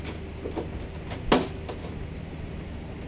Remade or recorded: recorded